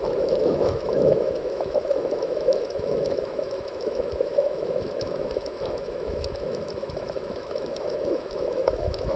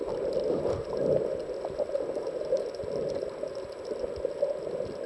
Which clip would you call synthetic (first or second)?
first